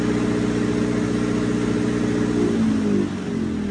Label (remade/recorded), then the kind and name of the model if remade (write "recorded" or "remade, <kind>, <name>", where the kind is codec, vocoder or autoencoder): recorded